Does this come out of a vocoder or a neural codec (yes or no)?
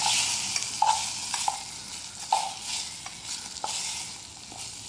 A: no